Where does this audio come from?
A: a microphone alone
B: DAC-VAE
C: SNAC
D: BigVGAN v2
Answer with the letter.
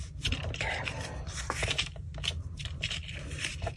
A